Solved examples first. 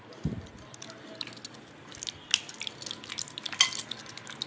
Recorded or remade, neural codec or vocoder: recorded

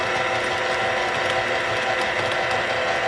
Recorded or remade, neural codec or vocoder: recorded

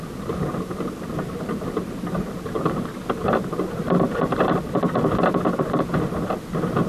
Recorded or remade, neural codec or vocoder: recorded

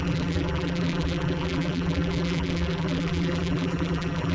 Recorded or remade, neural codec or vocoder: remade, vocoder, BigVGAN v2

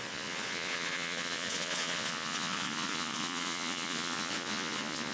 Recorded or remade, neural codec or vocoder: remade, vocoder, Vocos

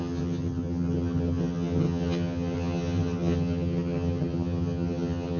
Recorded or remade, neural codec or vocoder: remade, vocoder, HiFi-GAN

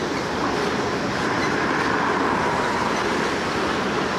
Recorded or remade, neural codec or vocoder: recorded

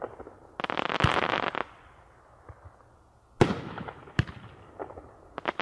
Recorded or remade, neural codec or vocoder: recorded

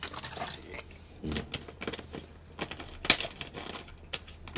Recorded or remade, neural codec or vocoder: recorded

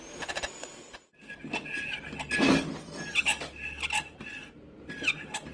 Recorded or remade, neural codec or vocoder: recorded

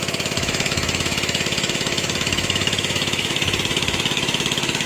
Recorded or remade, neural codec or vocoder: remade, autoencoder, DAC-VAE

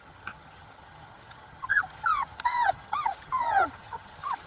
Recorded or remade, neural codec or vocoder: remade, vocoder, HiFi-GAN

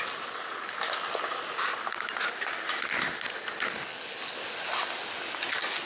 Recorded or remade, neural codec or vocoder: recorded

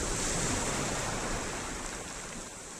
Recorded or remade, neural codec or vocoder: recorded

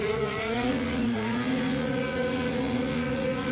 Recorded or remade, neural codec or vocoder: remade, vocoder, Vocos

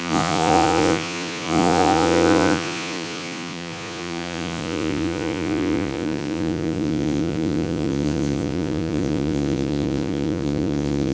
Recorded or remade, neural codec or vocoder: remade, vocoder, Vocos